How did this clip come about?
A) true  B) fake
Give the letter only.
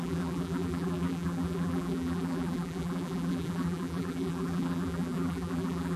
B